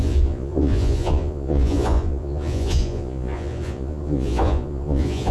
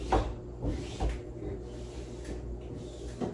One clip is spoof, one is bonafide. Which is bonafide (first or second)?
second